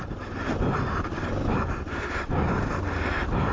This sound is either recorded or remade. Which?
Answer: recorded